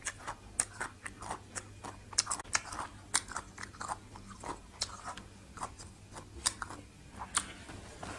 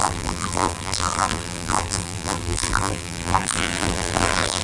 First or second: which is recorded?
first